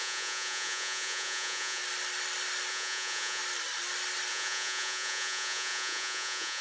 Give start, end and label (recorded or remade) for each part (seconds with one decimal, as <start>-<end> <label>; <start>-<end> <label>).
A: 0.0-1.8 remade; 1.8-2.7 recorded; 2.7-3.4 remade; 3.4-4.3 recorded; 4.3-6.6 remade